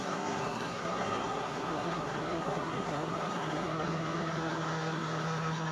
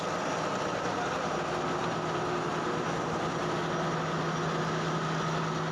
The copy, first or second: first